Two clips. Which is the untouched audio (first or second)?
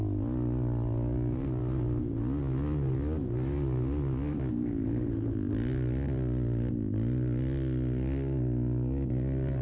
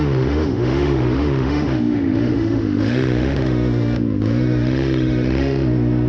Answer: first